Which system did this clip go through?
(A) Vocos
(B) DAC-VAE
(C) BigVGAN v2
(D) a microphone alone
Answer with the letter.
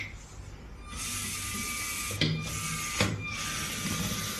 D